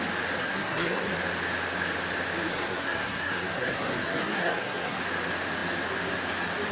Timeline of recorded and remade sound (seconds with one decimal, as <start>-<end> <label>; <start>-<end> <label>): 0.0-0.4 recorded; 0.4-1.1 remade; 1.1-2.5 recorded; 2.5-5.0 remade; 5.0-6.7 recorded

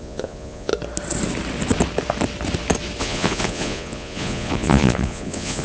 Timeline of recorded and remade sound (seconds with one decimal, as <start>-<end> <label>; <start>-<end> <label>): 0.0-0.7 remade; 0.7-3.0 recorded; 3.0-5.6 remade

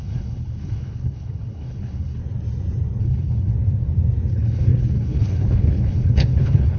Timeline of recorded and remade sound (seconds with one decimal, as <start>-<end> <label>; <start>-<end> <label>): 0.0-2.2 remade; 2.2-3.0 recorded; 3.0-3.5 remade; 3.5-4.3 recorded; 4.3-6.8 remade

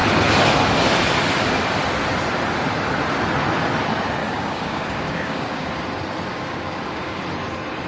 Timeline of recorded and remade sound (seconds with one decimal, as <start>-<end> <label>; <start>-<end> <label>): 0.0-4.2 recorded; 4.2-5.7 remade; 5.7-6.3 recorded; 6.3-7.2 remade; 7.2-7.9 recorded

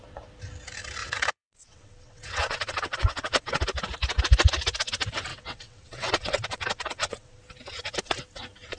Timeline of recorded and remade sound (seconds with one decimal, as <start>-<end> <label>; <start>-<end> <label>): 0.0-1.0 recorded; 1.0-3.6 remade; 3.6-5.3 recorded; 5.3-7.4 remade; 7.4-8.8 recorded

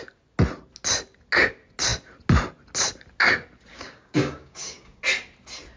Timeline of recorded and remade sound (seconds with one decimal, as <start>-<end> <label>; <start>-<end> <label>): 0.0-3.7 recorded; 3.7-5.0 remade; 5.0-5.8 recorded

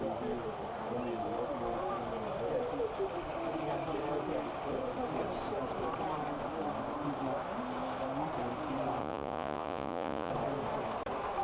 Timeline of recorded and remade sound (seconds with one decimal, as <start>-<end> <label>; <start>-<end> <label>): 0.0-9.0 recorded; 9.0-10.3 remade; 10.3-11.4 recorded